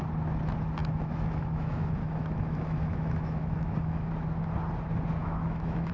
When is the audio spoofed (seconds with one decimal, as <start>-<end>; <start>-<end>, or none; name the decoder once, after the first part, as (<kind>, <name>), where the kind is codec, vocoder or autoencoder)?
0.8-4.1 (autoencoder, DAC-VAE); 5.2-5.9